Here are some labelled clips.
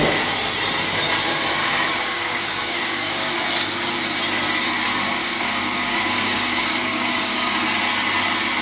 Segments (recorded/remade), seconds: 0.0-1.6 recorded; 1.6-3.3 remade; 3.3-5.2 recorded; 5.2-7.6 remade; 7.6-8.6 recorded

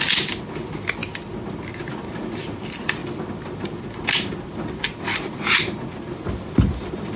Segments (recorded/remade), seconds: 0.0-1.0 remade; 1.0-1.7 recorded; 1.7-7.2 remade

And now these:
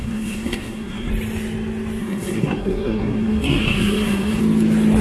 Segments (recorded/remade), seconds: 0.0-1.1 remade; 1.1-2.0 recorded; 2.0-4.4 remade; 4.4-5.0 recorded

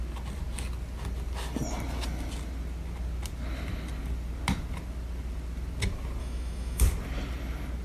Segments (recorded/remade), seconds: 0.0-6.2 recorded; 6.2-6.8 remade; 6.8-7.8 recorded

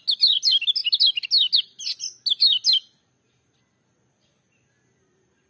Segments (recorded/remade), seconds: 0.0-5.5 recorded

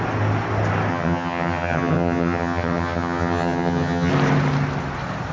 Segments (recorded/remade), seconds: 0.0-0.9 recorded; 0.9-4.1 remade; 4.1-5.3 recorded